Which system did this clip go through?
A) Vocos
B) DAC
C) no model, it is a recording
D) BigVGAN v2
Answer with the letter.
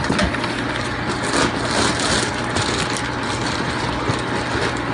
C